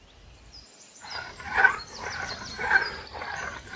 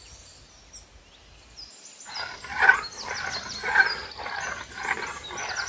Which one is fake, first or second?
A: first